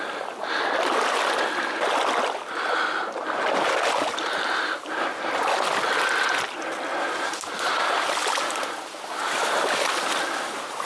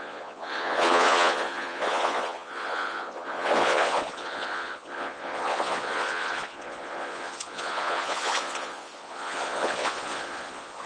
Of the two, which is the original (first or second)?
first